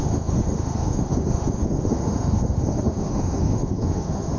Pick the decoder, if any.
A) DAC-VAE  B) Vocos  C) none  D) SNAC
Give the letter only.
A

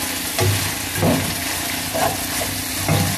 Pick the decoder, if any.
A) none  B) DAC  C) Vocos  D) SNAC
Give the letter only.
A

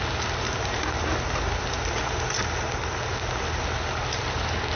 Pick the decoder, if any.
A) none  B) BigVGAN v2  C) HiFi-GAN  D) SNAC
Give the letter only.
A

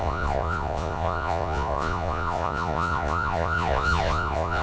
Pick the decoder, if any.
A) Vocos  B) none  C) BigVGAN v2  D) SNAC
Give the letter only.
A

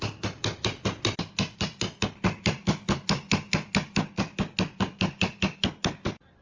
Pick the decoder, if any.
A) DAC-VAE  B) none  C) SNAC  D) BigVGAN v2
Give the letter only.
B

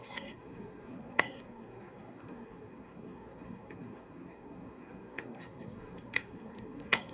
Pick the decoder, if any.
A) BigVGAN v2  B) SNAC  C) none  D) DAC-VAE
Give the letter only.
B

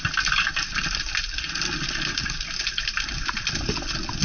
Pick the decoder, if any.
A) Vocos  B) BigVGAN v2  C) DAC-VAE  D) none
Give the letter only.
D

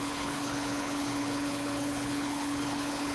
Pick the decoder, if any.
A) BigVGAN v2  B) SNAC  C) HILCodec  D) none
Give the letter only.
C